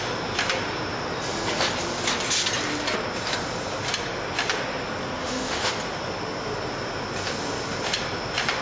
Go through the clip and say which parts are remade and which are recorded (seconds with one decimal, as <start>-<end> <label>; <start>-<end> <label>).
0.0-5.2 recorded; 5.2-5.7 remade; 5.7-8.6 recorded

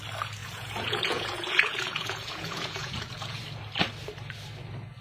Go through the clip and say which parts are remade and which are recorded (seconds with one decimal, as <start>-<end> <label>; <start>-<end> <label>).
0.0-0.4 recorded; 0.4-3.4 remade; 3.4-5.0 recorded

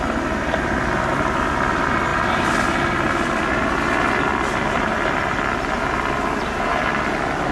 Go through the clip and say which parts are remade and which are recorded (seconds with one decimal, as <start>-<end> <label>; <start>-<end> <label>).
0.0-7.5 recorded

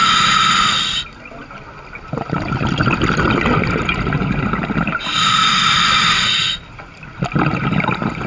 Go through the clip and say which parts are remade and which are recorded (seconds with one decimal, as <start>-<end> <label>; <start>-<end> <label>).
0.0-8.3 recorded

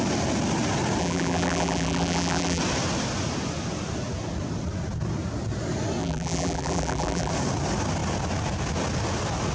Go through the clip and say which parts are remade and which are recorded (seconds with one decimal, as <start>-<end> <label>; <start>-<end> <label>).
0.0-1.0 recorded; 1.0-2.6 remade; 2.6-6.0 recorded; 6.0-7.3 remade; 7.3-9.5 recorded

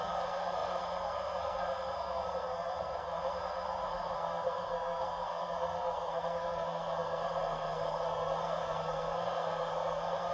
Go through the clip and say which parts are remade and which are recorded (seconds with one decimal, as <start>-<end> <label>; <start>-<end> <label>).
0.0-10.3 remade